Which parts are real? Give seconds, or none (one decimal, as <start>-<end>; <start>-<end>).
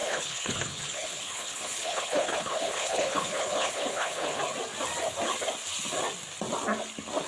4.4-7.3